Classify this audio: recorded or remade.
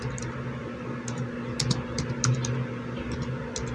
recorded